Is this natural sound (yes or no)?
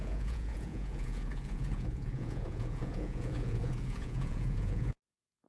no